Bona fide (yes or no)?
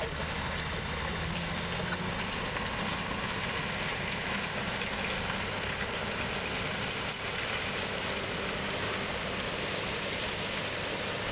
yes